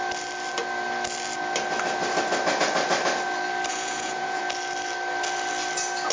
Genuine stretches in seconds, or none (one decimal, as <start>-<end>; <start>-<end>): 0.0-3.7; 4.4-6.1